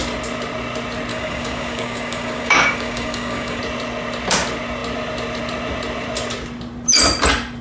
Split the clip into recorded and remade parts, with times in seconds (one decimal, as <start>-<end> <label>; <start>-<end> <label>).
0.0-1.1 recorded; 1.1-3.6 remade; 3.6-7.6 recorded